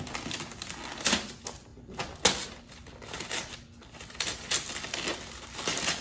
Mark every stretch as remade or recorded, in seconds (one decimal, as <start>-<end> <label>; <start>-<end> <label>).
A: 0.0-6.0 recorded